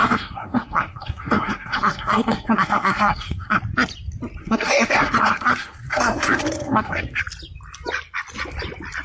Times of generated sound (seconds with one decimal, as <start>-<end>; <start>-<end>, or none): 0.0-3.6; 4.4-7.2